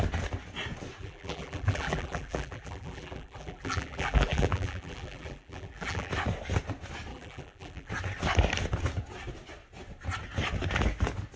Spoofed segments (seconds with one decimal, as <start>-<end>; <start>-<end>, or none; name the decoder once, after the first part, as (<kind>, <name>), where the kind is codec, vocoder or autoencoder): 1.0-6.1 (vocoder, BigVGAN v2); 7.1-7.9